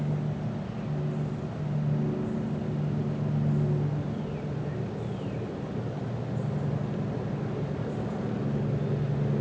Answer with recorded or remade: recorded